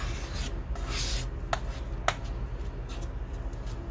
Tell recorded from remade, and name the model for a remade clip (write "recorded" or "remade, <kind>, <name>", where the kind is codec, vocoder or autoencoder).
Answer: recorded